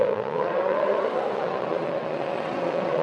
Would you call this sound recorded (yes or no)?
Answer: no